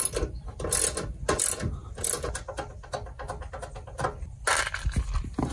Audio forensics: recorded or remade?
recorded